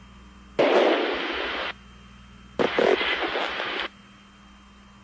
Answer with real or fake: real